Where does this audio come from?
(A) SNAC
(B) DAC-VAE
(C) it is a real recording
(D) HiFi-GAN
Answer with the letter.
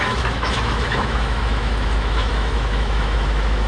B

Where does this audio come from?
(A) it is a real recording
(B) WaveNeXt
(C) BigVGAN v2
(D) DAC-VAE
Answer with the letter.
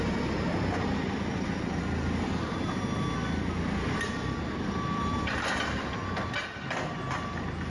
A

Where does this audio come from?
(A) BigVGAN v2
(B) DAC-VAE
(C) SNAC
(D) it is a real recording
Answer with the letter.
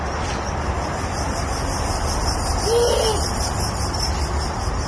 D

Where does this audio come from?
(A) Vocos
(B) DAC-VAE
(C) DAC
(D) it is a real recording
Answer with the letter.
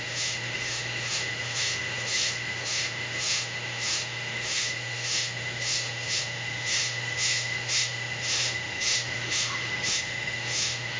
B